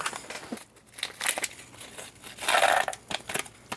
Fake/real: real